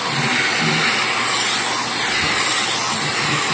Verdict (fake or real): real